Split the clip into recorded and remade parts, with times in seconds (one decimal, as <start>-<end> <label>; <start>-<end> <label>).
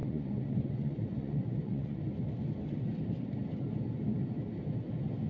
0.0-2.0 remade; 2.0-5.3 recorded